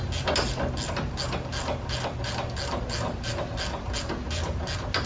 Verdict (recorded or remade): recorded